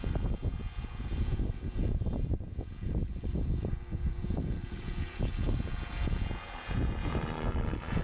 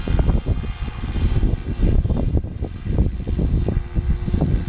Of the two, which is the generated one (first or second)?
first